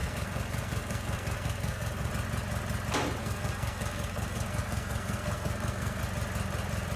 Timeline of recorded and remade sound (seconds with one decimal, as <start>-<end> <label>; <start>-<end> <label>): 0.0-2.1 remade; 2.1-3.2 recorded; 3.2-6.0 remade; 6.0-7.0 recorded